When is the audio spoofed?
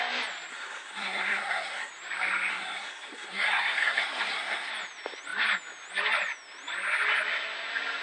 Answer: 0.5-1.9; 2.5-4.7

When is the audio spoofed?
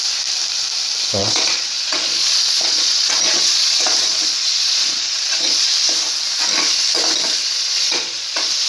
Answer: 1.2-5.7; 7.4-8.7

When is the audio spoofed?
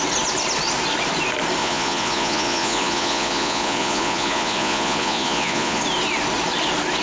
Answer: 1.6-5.8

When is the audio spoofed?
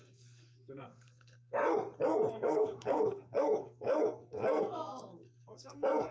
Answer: 0.0-1.6; 2.3-6.1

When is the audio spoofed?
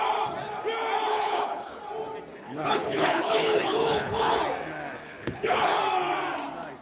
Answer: 1.1-1.8; 2.3-4.4; 5.0-5.8